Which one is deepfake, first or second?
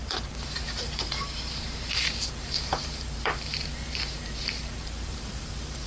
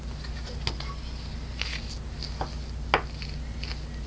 first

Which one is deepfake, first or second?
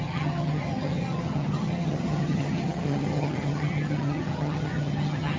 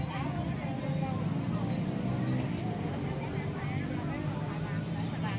first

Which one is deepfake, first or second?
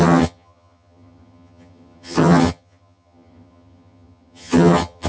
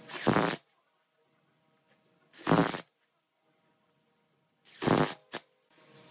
first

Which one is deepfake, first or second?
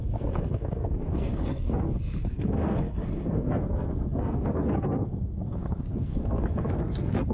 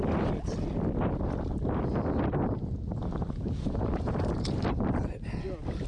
first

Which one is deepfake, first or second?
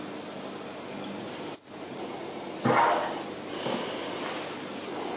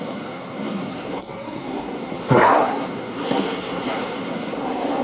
second